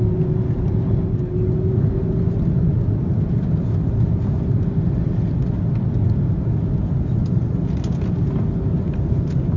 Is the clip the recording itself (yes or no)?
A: yes